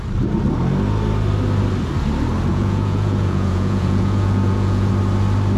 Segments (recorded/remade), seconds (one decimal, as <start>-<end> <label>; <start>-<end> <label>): 0.0-2.5 recorded; 2.5-4.9 remade; 4.9-5.6 recorded